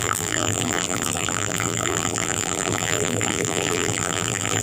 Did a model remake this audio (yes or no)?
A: yes